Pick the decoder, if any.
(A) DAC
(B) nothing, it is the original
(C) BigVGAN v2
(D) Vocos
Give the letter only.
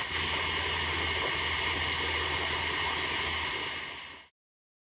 B